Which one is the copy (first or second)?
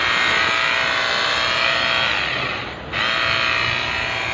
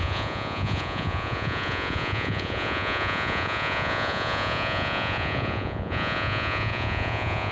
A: second